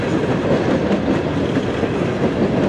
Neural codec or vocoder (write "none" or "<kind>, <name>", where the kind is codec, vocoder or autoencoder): none